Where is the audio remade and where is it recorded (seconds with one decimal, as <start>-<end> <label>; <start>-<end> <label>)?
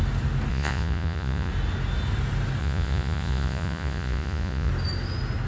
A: 0.0-0.5 recorded; 0.5-1.5 remade; 1.5-2.6 recorded; 2.6-4.7 remade; 4.7-5.5 recorded